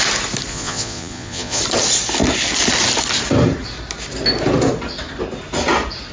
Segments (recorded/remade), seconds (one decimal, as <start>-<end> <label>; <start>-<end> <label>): 0.0-0.5 recorded; 0.5-1.6 remade; 1.6-6.1 recorded